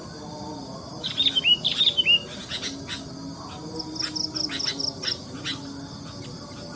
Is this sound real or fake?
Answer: real